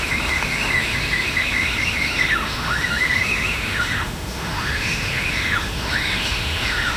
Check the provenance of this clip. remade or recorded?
remade